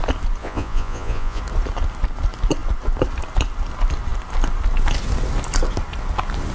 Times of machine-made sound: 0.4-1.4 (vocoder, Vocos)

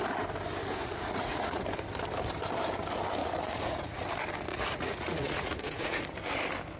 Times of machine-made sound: 0.8-1.6 (vocoder, Vocos); 3.2-4.1; 4.5-6.0